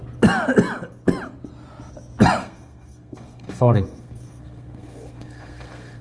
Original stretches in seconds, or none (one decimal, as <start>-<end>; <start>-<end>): 0.0-2.4